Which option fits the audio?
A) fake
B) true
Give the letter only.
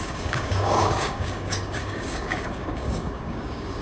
A